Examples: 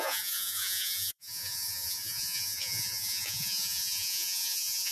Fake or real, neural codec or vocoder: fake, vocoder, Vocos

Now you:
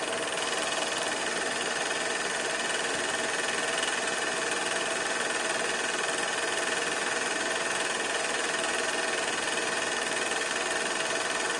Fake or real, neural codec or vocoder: real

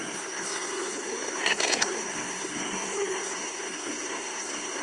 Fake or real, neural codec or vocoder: fake, codec, SNAC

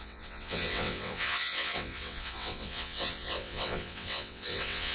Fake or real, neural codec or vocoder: fake, vocoder, WaveNeXt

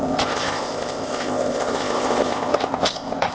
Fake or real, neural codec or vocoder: fake, codec, ZipCodec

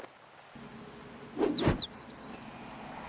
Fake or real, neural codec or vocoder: real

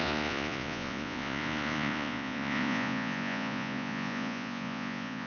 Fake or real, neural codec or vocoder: fake, vocoder, Vocos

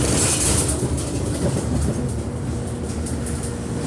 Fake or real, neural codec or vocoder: real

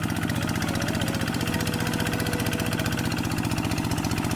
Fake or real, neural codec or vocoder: real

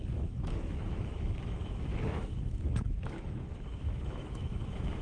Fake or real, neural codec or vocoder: fake, autoencoder, DAC-VAE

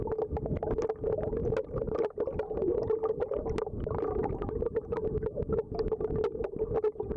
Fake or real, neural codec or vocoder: real